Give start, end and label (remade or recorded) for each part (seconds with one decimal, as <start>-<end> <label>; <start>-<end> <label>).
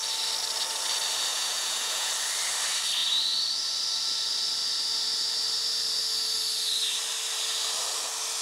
0.0-1.3 recorded; 1.3-2.1 remade; 2.1-8.4 recorded